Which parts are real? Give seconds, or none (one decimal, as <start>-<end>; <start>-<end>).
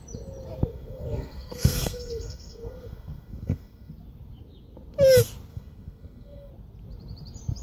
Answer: 0.0-0.7; 3.9-5.5; 6.5-7.6